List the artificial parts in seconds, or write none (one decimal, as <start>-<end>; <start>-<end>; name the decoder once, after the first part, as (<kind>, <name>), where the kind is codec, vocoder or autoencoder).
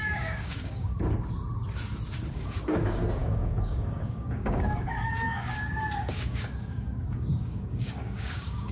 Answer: 0.0-0.9 (codec, DAC); 2.3-8.7